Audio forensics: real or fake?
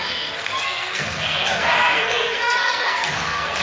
fake